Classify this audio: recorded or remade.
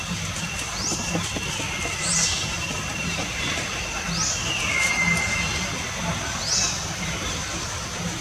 recorded